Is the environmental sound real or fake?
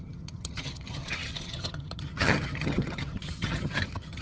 fake